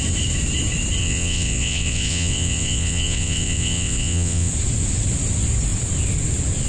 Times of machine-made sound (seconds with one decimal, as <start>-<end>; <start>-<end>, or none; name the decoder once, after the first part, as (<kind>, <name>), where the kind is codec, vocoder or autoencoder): 1.0-4.5 (vocoder, WaveNeXt)